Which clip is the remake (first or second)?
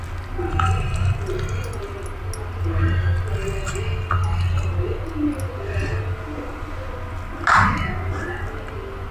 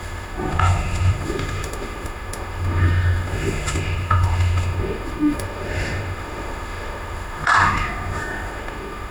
second